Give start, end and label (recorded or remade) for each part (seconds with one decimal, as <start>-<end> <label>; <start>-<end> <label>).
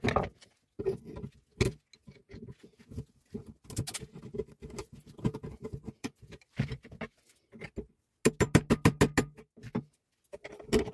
0.0-2.0 recorded; 2.0-3.0 remade; 3.0-4.8 recorded; 4.8-6.4 remade; 6.4-10.9 recorded